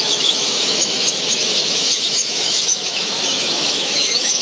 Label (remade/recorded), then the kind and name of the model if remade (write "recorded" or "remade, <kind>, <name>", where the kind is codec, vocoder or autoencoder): remade, autoencoder, DAC-VAE